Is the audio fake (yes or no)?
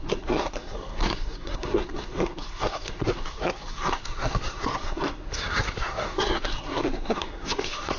yes